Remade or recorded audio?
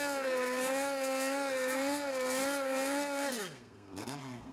remade